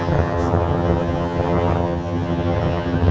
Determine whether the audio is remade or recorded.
remade